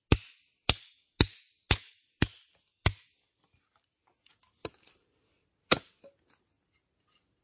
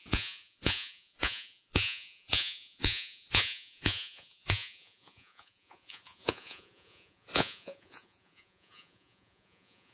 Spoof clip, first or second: second